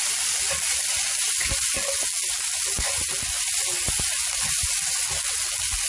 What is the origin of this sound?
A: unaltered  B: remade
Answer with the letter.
A